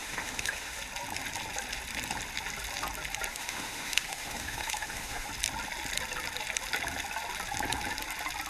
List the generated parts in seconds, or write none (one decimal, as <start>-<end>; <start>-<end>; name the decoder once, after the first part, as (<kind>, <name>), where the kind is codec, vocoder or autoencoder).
0.0-0.8 (autoencoder, DAC-VAE); 3.3-5.3